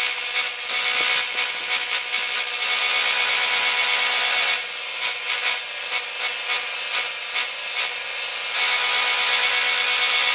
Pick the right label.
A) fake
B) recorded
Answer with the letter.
B